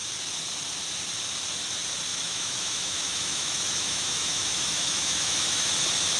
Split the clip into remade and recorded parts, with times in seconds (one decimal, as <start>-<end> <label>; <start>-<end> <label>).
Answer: 0.0-2.1 recorded; 2.1-5.7 remade; 5.7-6.2 recorded